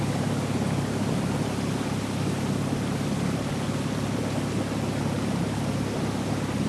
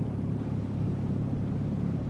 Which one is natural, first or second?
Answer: first